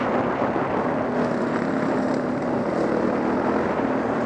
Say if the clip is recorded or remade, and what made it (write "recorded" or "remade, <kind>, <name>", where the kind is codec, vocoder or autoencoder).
recorded